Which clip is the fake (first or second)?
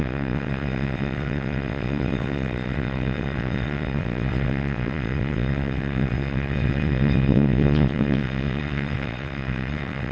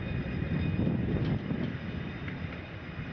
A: first